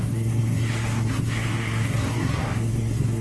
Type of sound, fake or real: fake